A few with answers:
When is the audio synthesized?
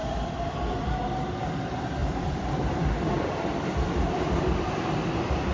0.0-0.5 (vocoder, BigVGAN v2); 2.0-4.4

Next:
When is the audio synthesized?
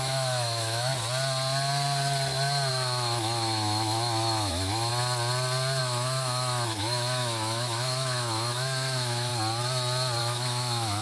0.0-0.9 (autoencoder, DAC-VAE); 2.7-4.9; 5.8-9.3; 10.2-11.0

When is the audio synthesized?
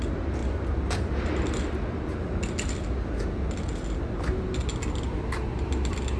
none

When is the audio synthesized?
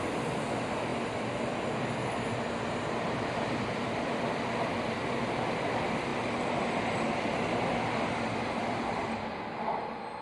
6.1-6.6 (vocoder, BigVGAN v2)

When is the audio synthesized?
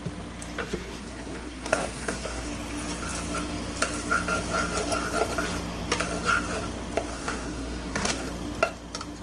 0.6-2.5 (codec, SNAC); 7.1-8.3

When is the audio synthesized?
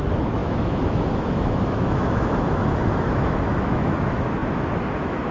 0.0-5.3 (autoencoder, DAC-VAE)